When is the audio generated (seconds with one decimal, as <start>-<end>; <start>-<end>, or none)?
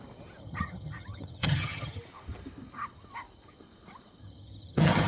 0.4-2.0; 4.2-5.1